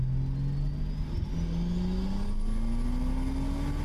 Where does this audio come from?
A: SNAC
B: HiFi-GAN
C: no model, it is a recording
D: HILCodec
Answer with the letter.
C